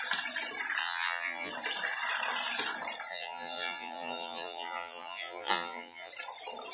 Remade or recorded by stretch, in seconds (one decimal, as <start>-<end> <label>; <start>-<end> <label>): 0.0-0.8 recorded; 0.8-1.5 remade; 1.5-3.1 recorded; 3.1-6.1 remade; 6.1-6.7 recorded